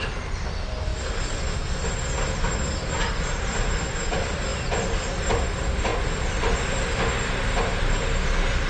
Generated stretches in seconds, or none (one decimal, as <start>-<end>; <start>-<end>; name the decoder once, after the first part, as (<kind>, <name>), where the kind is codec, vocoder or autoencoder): 0.0-0.9 (vocoder, BigVGAN v2); 2.0-8.7